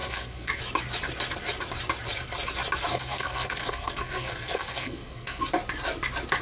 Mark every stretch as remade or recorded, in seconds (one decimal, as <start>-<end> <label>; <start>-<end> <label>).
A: 0.0-0.6 remade; 0.6-2.9 recorded; 2.9-5.4 remade; 5.4-6.4 recorded